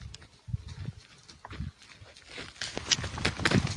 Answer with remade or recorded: recorded